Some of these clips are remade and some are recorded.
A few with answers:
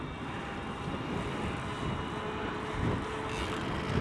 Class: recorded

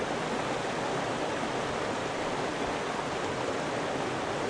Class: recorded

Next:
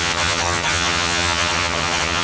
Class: remade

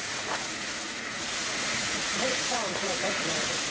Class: remade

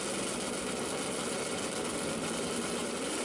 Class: recorded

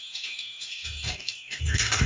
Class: remade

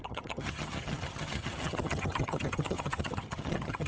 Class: remade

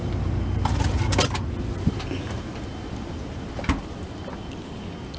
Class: recorded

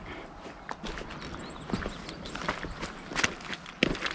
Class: recorded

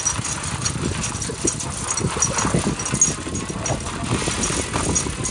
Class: recorded